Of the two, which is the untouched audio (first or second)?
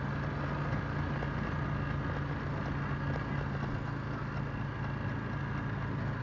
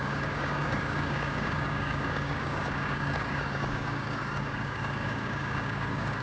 first